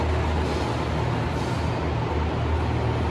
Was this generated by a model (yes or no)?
no